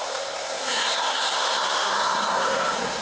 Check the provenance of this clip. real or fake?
fake